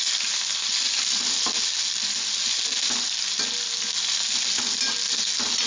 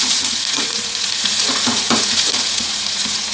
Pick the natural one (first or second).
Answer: first